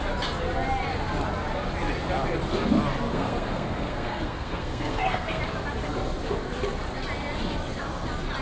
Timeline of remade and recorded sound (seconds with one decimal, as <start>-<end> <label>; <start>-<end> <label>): 0.0-3.1 recorded; 3.1-5.4 remade; 5.4-8.4 recorded

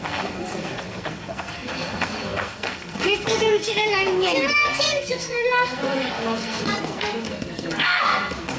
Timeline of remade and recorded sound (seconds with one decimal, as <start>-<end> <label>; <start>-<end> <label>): 0.0-8.6 remade

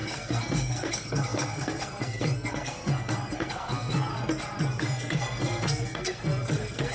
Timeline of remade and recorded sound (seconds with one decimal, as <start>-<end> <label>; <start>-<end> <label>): 0.0-4.1 remade; 4.1-4.8 recorded; 4.8-6.9 remade

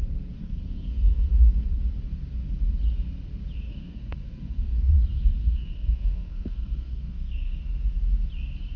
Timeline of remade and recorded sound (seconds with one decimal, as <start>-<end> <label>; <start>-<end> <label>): 0.0-0.4 recorded; 0.4-1.8 remade; 1.8-3.7 recorded; 3.7-4.9 remade; 4.9-5.4 recorded; 5.4-7.6 remade; 7.6-8.8 recorded